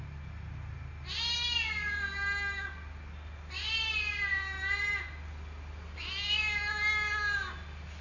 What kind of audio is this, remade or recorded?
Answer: recorded